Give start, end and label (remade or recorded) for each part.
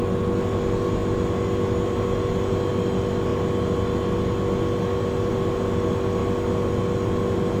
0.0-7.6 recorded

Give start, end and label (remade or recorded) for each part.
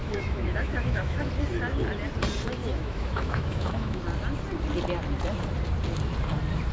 0.0-1.3 remade; 1.3-2.6 recorded; 2.6-4.0 remade; 4.0-6.7 recorded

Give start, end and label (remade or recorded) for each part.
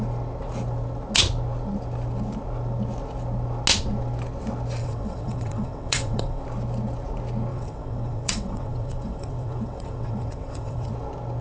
0.0-4.8 recorded; 4.8-6.4 remade; 6.4-7.5 recorded; 7.5-10.9 remade; 10.9-11.4 recorded